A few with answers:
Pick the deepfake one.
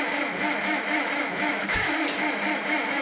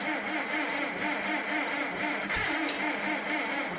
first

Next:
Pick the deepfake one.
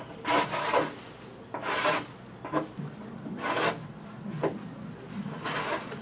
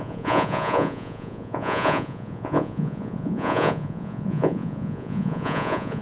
second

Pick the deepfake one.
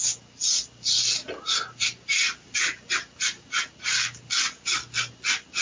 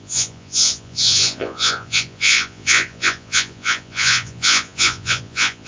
second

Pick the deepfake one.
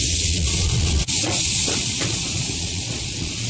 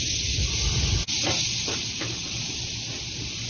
first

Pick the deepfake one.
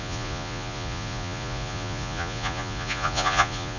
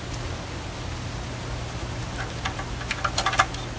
first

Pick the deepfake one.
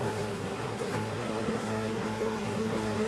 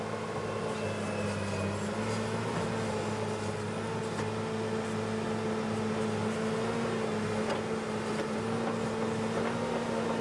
first